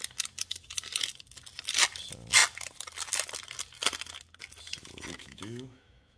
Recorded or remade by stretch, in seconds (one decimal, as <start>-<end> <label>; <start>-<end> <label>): 0.0-5.2 recorded; 5.2-6.2 remade